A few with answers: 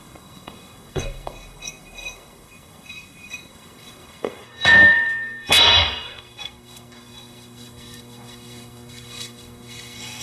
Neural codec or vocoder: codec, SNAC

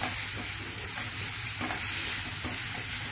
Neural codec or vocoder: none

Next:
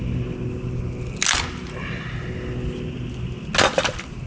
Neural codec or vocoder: none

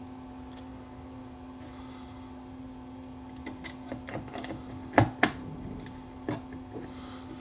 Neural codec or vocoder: none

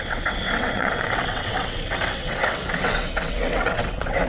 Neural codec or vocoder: vocoder, WaveNeXt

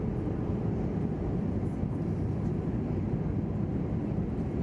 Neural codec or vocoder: none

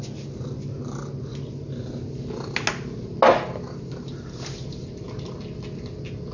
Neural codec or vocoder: none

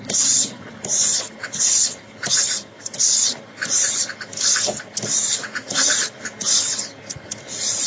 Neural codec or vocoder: vocoder, BigVGAN v2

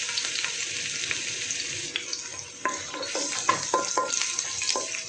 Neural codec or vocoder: none